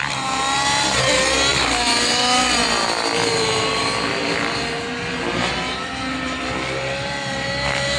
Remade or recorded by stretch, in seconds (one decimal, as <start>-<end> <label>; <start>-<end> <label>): 0.0-8.0 recorded